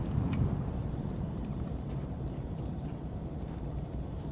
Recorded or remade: remade